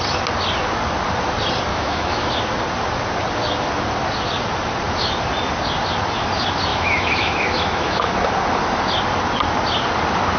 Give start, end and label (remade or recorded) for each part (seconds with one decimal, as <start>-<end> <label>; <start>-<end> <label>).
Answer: 0.0-1.7 recorded; 1.7-2.3 remade; 2.3-6.7 recorded; 6.7-8.1 remade; 8.1-10.4 recorded